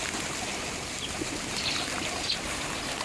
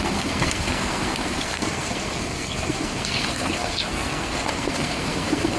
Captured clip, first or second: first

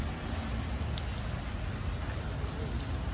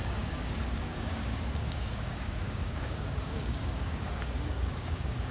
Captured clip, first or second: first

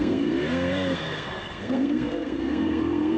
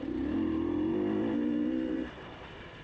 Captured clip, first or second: second